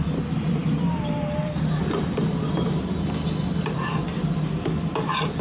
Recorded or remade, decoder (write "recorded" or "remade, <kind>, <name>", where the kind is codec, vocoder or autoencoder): recorded